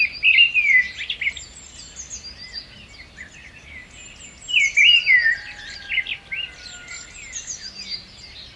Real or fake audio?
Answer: real